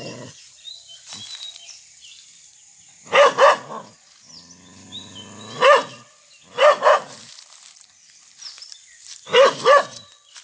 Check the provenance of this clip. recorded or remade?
recorded